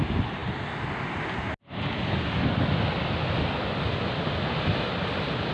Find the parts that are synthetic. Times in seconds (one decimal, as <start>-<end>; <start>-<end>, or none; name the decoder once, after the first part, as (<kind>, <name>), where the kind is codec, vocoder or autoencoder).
none